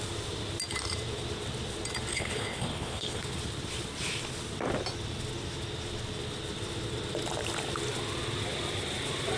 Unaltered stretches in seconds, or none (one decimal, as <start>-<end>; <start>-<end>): 0.0-2.1; 3.2-9.4